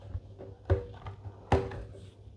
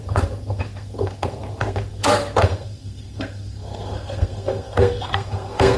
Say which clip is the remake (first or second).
second